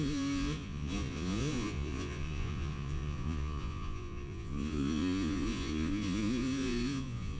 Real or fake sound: fake